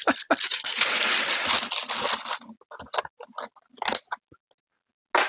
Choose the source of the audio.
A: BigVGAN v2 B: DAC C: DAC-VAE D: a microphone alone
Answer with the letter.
D